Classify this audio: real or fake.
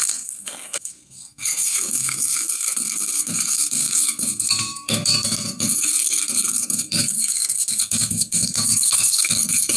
fake